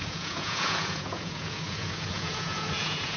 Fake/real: fake